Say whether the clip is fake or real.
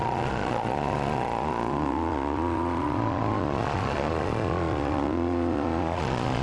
fake